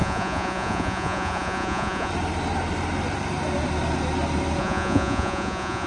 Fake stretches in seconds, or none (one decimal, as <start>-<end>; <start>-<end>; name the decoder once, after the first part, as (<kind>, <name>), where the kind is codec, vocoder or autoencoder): 0.0-2.1 (vocoder, Vocos); 4.6-5.9